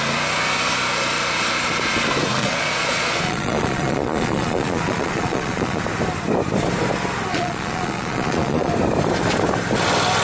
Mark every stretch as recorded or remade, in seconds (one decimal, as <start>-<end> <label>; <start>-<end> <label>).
0.0-2.4 recorded; 2.4-5.8 remade; 5.8-7.3 recorded; 7.3-8.7 remade; 8.7-10.2 recorded